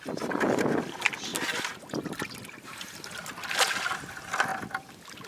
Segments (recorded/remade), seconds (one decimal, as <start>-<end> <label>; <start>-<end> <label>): 0.0-5.3 recorded